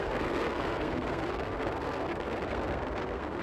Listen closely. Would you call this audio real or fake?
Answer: fake